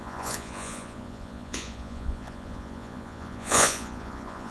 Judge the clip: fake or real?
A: fake